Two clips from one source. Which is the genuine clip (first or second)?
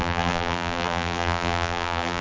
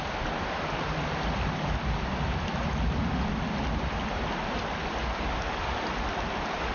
second